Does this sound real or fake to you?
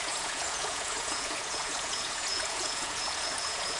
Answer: fake